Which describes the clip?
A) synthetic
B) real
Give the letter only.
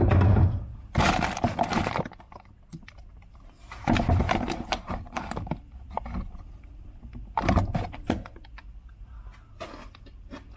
B